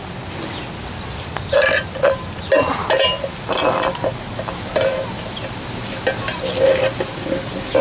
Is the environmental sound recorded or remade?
recorded